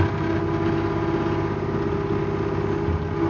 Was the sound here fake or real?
real